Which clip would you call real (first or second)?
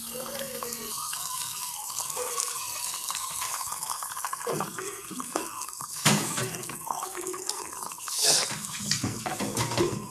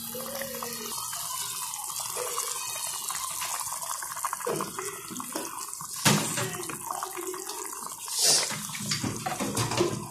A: second